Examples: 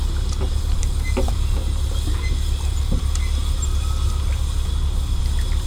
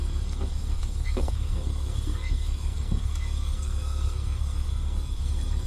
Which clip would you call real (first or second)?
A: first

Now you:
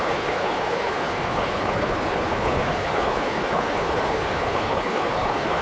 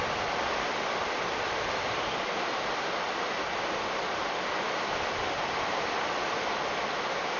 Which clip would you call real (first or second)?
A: second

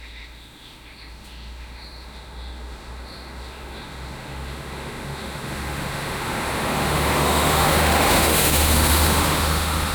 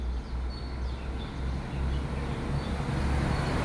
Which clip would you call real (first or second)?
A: second